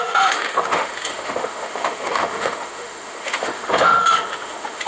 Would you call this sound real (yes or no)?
no